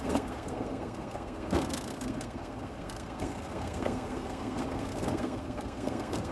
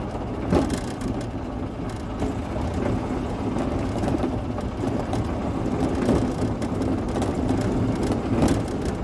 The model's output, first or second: first